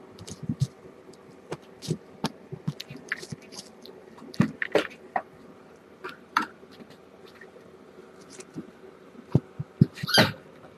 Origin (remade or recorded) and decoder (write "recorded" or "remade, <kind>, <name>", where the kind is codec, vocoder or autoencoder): remade, vocoder, BigVGAN v2